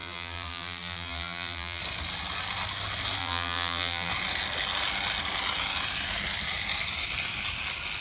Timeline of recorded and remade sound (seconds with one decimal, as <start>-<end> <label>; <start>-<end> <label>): 0.0-1.8 remade; 1.8-3.2 recorded; 3.2-4.1 remade; 4.1-8.0 recorded